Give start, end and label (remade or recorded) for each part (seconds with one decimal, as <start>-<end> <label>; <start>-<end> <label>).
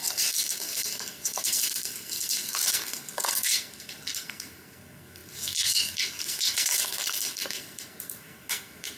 0.0-9.0 remade